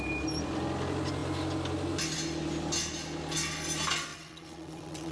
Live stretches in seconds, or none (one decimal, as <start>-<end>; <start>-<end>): 0.0-4.1